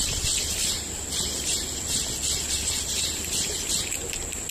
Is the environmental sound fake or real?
real